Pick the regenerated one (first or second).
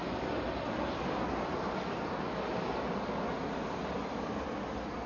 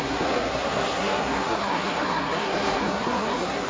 second